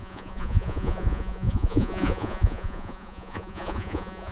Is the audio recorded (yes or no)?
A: no